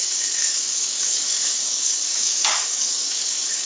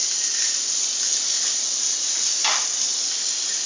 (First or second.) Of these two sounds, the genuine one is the second